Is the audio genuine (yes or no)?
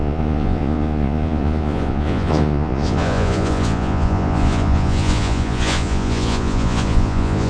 no